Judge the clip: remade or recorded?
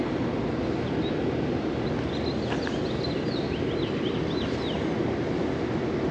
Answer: recorded